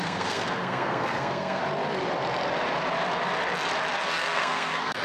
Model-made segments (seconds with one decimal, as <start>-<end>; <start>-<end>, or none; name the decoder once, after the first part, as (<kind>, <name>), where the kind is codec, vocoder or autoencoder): 0.0-1.6 (codec, SNAC); 4.0-5.0